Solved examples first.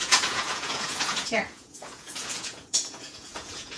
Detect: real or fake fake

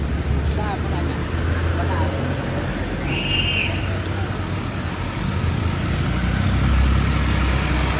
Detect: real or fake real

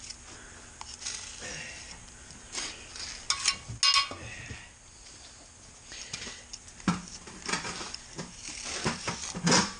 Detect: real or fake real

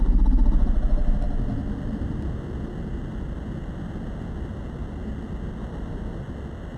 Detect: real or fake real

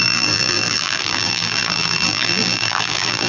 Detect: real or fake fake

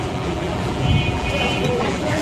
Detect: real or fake fake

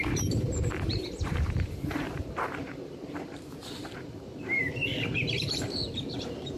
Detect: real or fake fake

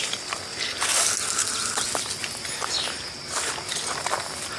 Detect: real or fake real